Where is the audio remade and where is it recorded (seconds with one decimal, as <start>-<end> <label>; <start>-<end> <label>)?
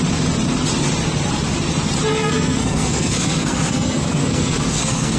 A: 0.0-2.1 recorded; 2.1-5.2 remade